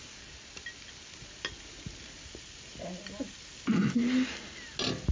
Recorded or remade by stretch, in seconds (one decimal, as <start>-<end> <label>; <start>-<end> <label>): 0.0-5.1 recorded